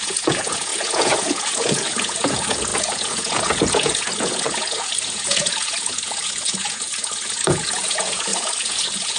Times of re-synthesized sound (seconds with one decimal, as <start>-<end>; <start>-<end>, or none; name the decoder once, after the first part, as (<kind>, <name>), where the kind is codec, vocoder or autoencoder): 0.0-9.2 (vocoder, Vocos)